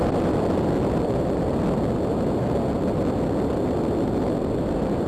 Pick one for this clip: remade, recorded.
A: recorded